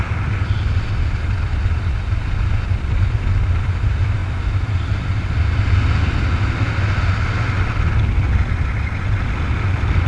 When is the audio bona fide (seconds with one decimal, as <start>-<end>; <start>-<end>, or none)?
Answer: 0.0-10.1